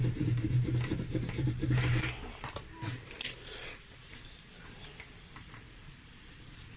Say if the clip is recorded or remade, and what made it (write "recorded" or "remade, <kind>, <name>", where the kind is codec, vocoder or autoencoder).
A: remade, vocoder, BigVGAN v2